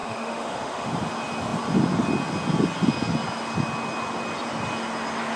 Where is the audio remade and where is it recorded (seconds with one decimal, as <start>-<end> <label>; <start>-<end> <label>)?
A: 0.0-0.9 remade; 0.9-5.4 recorded